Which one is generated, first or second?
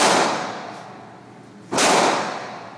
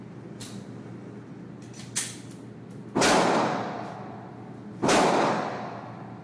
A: first